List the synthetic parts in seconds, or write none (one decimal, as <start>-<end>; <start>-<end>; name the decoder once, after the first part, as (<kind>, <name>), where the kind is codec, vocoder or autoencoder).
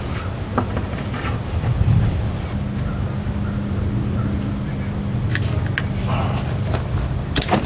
none